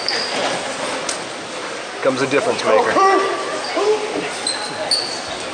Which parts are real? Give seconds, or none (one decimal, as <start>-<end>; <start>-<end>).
0.0-5.5